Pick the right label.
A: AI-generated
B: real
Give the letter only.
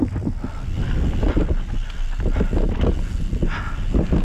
B